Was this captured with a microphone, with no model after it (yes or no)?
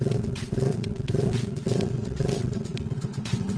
no